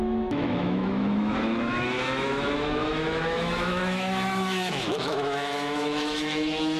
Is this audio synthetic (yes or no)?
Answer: yes